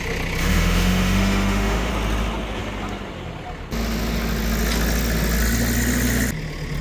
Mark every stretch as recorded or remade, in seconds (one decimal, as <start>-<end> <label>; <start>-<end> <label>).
0.0-0.4 recorded; 0.4-1.9 remade; 1.9-6.8 recorded